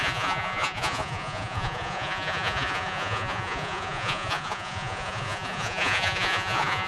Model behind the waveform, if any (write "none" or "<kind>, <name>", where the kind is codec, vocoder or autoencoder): vocoder, Vocos